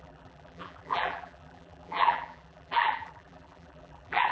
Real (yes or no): no